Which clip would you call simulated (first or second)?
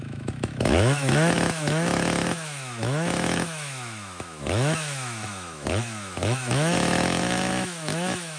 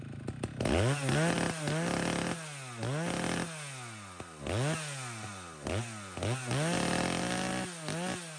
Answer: first